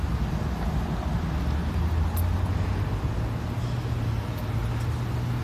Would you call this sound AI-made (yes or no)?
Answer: no